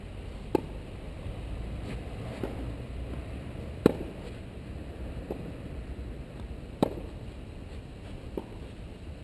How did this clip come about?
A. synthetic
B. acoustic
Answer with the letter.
A